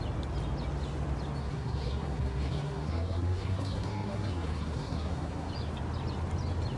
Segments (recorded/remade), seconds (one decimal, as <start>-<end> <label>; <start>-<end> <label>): 0.0-1.4 recorded; 1.4-5.5 remade; 5.5-6.8 recorded